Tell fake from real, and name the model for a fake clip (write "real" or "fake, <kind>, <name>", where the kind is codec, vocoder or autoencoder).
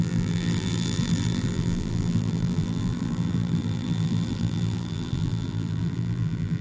fake, vocoder, BigVGAN v2